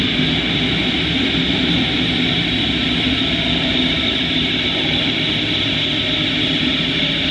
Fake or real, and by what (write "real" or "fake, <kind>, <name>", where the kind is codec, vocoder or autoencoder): real